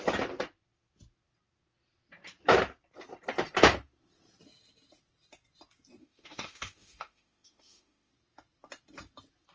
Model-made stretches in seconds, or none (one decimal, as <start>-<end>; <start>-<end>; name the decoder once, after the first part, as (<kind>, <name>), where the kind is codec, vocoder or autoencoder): 6.0-8.1 (autoencoder, DAC-VAE)